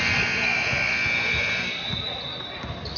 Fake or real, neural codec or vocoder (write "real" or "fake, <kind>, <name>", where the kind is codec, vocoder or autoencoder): real